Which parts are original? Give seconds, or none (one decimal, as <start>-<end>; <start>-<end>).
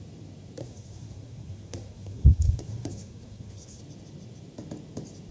0.0-0.6; 3.8-5.3